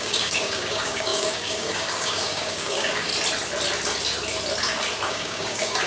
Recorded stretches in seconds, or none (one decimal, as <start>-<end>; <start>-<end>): 3.1-5.1